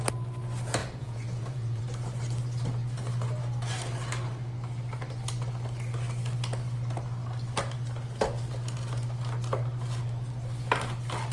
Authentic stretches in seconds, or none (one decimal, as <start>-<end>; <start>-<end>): 0.0-0.8; 1.8-11.3

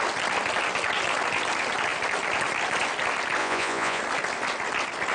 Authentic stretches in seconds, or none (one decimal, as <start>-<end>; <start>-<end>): 0.0-3.4; 4.0-5.1

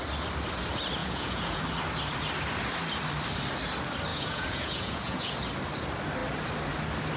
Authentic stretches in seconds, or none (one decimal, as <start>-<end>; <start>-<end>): 0.0-1.0; 1.6-4.1; 5.4-7.2

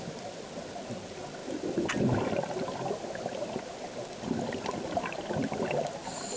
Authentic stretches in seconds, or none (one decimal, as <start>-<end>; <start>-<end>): 0.0-6.4

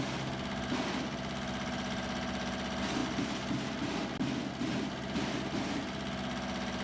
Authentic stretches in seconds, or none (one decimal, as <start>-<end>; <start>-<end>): 0.0-6.8

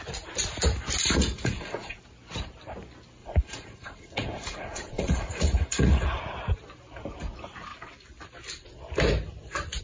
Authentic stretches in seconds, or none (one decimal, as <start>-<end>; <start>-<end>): 0.0-1.0; 2.0-3.2; 6.2-9.8

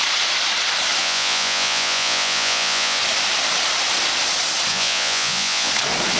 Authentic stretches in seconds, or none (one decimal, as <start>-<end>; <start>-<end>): 0.0-1.0; 3.0-4.7; 5.7-6.2

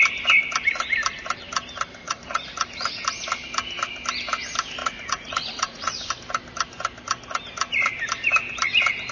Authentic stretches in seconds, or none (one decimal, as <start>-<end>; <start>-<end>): 0.0-2.0; 3.0-4.8; 6.1-9.1